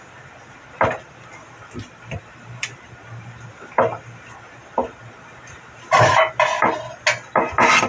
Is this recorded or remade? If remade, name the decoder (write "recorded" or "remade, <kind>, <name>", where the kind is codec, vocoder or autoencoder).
recorded